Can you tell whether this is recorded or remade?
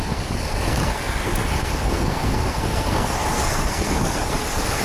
remade